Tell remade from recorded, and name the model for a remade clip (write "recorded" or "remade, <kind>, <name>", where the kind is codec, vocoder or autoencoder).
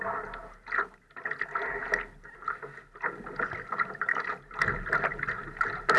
recorded